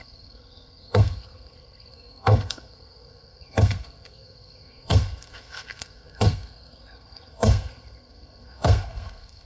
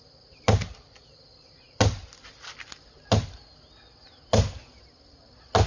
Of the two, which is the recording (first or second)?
second